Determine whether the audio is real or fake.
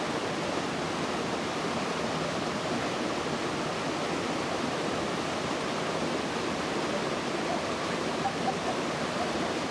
real